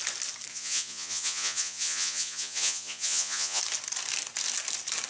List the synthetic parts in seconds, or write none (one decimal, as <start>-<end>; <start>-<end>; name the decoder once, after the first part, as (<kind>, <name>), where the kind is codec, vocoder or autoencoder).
0.5-3.6 (vocoder, Vocos)